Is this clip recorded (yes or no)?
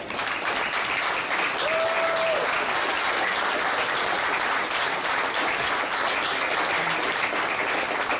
yes